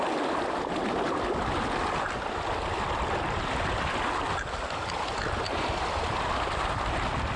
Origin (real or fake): real